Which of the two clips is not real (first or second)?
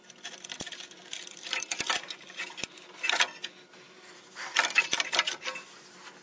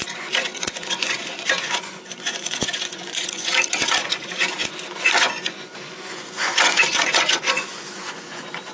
second